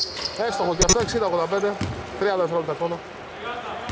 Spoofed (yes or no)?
no